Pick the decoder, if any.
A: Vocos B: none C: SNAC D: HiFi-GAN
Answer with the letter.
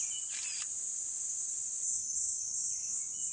B